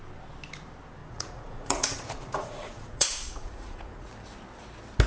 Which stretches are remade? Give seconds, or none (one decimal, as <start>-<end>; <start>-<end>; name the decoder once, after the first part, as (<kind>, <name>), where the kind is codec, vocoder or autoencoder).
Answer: 1.0-4.1 (vocoder, Vocos)